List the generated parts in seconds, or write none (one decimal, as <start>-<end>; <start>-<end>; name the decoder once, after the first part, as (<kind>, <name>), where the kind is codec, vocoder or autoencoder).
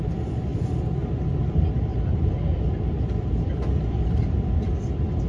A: 1.9-4.8 (vocoder, BigVGAN v2)